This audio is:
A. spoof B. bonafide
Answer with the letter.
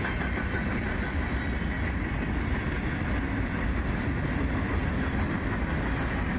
B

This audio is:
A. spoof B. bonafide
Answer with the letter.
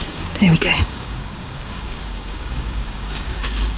A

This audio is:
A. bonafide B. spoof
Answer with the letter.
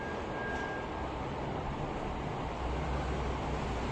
A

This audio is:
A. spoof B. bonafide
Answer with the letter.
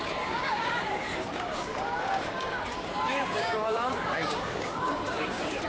A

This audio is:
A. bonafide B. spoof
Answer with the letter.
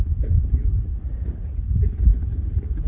A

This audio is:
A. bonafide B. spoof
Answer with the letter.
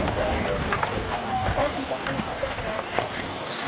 B